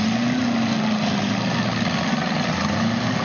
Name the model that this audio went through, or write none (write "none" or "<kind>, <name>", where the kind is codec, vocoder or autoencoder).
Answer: none